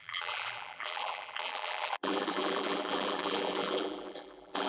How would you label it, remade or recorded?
remade